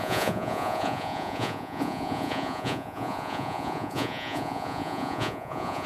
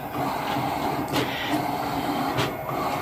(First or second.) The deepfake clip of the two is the first